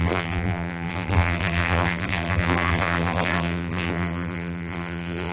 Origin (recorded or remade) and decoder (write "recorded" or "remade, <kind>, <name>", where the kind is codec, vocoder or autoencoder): remade, vocoder, BigVGAN v2